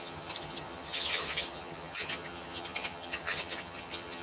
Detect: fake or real fake